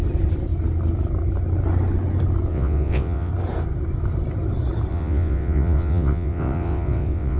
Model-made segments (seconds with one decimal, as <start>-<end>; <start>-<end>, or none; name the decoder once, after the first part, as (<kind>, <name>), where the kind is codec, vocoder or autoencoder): 2.5-3.3 (vocoder, WaveNeXt); 4.9-7.4